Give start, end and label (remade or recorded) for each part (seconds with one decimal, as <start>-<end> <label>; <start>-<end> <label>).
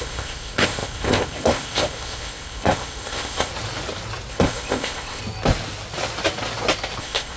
0.0-3.5 remade; 3.5-4.3 recorded; 4.3-5.2 remade; 5.2-7.0 recorded; 7.0-7.4 remade